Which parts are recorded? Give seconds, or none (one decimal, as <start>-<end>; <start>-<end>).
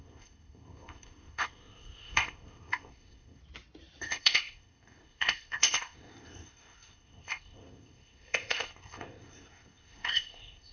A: 3.4-4.0